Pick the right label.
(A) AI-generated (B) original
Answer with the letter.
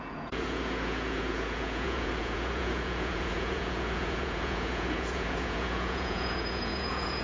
A